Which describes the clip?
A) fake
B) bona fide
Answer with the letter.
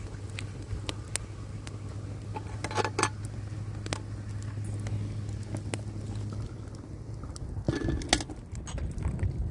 B